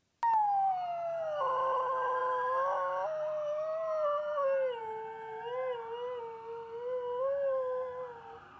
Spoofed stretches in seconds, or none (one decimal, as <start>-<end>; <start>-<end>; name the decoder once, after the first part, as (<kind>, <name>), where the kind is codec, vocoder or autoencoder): none